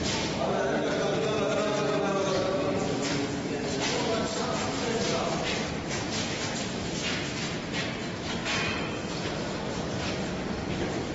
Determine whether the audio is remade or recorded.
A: recorded